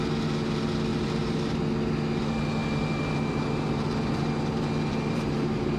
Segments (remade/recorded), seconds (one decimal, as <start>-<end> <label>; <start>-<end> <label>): 0.0-0.9 recorded; 0.9-1.6 remade; 1.6-2.6 recorded; 2.6-4.3 remade; 4.3-4.9 recorded; 4.9-5.8 remade